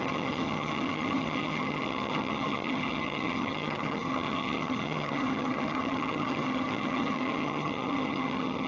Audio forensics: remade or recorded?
remade